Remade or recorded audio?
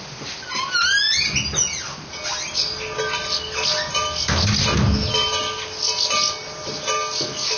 recorded